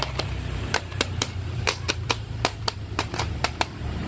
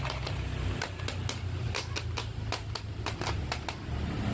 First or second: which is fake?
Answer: first